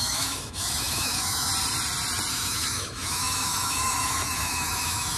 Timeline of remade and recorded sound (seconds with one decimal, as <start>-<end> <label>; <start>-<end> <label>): 0.0-1.5 remade; 1.5-2.3 recorded; 2.3-5.2 remade

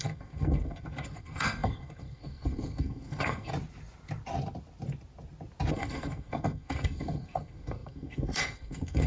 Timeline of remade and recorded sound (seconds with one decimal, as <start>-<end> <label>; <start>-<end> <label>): 0.0-3.5 remade; 3.5-5.7 recorded; 5.7-9.1 remade

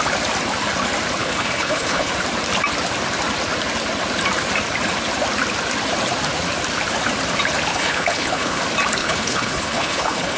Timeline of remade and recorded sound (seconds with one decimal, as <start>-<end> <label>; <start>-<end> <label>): 0.0-1.2 recorded; 1.2-2.1 remade; 2.1-7.7 recorded; 7.7-8.6 remade; 8.6-9.0 recorded; 9.0-10.4 remade

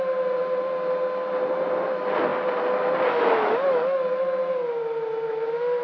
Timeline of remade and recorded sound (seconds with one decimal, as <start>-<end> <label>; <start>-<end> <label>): 0.0-5.8 recorded

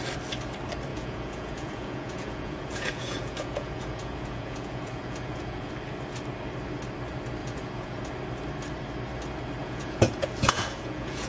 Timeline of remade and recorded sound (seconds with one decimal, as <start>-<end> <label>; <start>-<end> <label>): 0.0-0.9 recorded; 0.9-5.7 remade; 5.7-7.4 recorded; 7.4-8.0 remade; 8.0-9.6 recorded; 9.6-11.3 remade